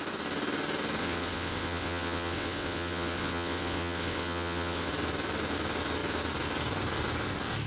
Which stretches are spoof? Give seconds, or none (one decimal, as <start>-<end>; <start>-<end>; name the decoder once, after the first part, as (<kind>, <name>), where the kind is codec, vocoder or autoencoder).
1.0-4.9 (vocoder, WaveNeXt)